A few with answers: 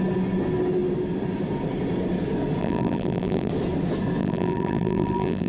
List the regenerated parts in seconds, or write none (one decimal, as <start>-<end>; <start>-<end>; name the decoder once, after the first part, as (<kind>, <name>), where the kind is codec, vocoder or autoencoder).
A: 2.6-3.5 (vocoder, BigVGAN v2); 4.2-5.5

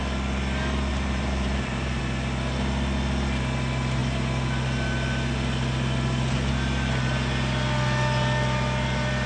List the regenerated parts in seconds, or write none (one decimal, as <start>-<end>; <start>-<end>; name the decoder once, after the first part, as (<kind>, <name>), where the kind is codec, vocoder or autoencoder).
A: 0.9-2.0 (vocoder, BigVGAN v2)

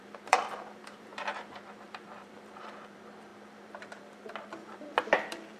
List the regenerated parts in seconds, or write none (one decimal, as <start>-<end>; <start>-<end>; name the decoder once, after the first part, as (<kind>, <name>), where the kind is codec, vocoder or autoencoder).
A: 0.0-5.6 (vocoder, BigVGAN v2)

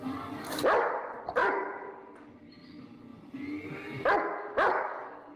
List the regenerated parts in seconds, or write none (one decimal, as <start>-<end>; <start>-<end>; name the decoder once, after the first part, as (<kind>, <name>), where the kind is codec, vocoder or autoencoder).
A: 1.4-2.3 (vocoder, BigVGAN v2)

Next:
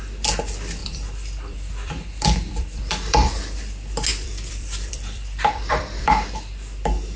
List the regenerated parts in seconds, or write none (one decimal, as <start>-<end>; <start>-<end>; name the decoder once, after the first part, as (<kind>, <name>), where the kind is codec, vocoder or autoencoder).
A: 0.8-3.6 (vocoder, BigVGAN v2); 4.1-6.1

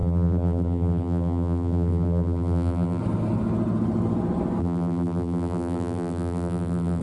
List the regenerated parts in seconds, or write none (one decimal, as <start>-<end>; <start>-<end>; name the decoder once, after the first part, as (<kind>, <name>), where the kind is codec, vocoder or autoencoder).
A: 0.0-3.0 (vocoder, BigVGAN v2); 4.6-7.0